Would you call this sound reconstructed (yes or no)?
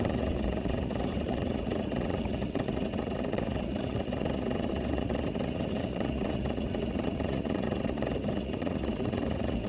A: yes